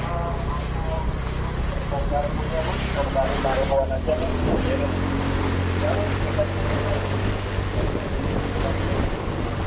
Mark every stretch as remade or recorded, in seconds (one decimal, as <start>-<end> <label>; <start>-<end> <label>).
0.0-9.7 recorded